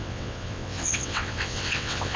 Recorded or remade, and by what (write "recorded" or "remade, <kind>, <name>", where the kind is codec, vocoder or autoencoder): remade, vocoder, WaveNeXt